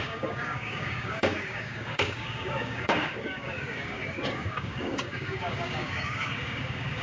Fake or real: fake